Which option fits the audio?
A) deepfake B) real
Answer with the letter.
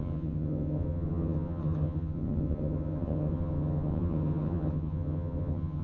A